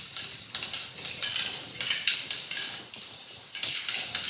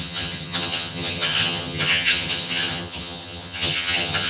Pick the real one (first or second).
first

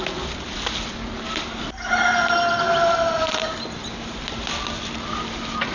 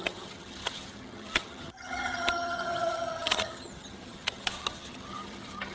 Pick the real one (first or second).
first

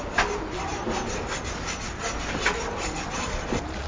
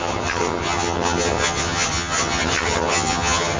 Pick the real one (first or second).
first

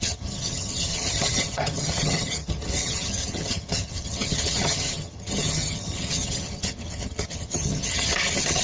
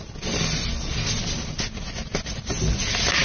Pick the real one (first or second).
second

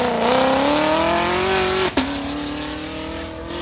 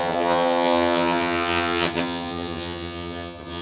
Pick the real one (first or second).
first